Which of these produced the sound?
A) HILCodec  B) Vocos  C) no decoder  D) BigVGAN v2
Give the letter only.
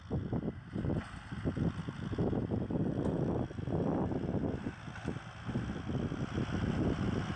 C